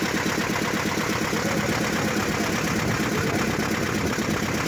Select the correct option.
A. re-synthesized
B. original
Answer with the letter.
B